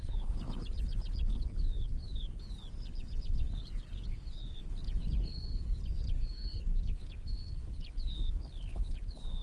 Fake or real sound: fake